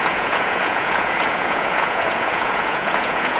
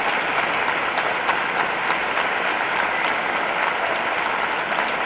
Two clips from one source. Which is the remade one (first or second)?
first